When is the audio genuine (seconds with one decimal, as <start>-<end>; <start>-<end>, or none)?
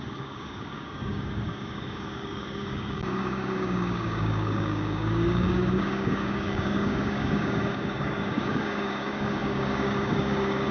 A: none